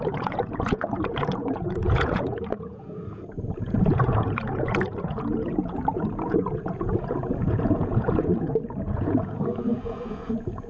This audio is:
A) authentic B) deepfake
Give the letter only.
B